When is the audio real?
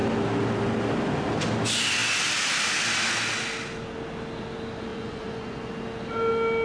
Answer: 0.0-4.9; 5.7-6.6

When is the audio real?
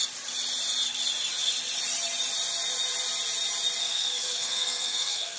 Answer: 0.0-3.8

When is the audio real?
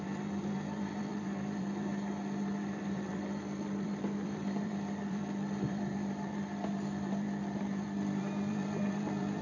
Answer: 1.9-2.5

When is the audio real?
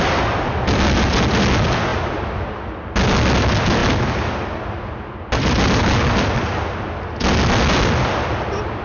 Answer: 0.0-8.8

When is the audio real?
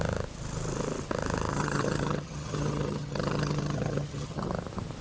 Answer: 0.0-1.5; 4.5-5.0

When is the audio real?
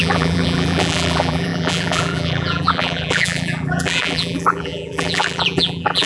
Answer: none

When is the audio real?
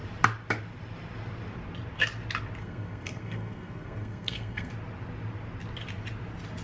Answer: 0.0-2.6; 4.7-6.6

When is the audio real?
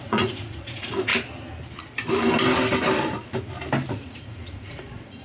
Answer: 1.1-3.9